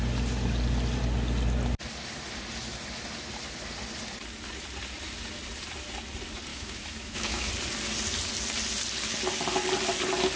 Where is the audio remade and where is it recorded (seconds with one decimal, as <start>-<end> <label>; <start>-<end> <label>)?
0.0-6.5 recorded; 6.5-7.5 remade; 7.5-10.4 recorded